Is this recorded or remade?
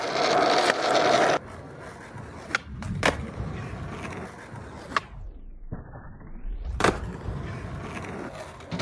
recorded